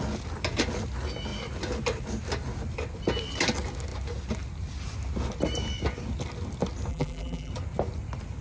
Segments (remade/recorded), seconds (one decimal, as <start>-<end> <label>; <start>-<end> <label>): 0.0-6.9 recorded; 6.9-7.5 remade; 7.5-8.4 recorded